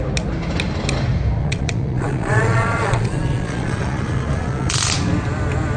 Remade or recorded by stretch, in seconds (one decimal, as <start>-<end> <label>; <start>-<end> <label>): 0.0-1.4 recorded; 1.4-4.9 remade; 4.9-5.8 recorded